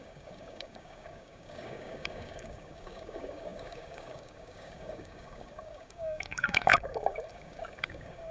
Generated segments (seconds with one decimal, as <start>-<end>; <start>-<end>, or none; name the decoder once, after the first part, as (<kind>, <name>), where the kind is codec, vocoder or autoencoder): 0.0-8.3 (codec, DAC)